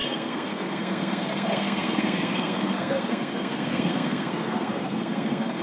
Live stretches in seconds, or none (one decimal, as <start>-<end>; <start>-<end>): none